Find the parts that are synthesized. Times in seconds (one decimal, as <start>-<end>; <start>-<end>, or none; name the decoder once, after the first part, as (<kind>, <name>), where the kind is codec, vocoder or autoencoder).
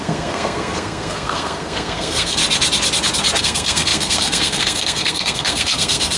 0.0-2.4 (codec, SNAC); 3.4-6.2